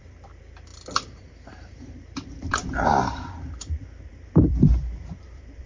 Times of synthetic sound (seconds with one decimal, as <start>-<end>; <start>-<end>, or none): 0.0-5.7